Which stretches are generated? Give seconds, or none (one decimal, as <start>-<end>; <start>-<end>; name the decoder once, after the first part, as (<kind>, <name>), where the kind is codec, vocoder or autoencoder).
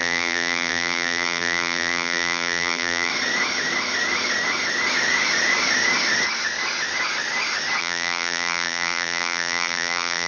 0.0-3.1 (vocoder, BigVGAN v2); 7.8-10.3